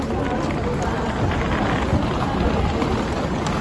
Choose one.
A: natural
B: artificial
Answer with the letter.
A